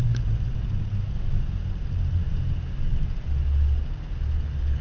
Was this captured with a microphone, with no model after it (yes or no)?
yes